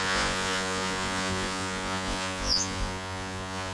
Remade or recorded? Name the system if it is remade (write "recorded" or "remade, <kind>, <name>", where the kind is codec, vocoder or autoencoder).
remade, vocoder, Vocos